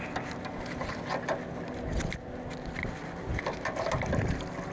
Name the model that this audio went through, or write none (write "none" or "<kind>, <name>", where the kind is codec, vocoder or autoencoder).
none